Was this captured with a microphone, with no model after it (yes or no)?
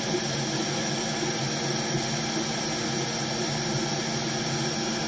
yes